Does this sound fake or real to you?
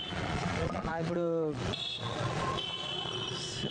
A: fake